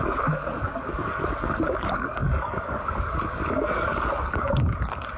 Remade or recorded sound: remade